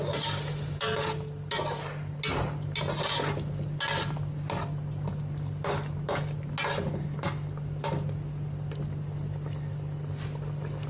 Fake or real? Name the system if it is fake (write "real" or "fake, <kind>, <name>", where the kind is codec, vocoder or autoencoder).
real